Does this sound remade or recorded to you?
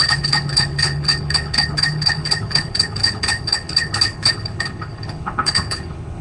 remade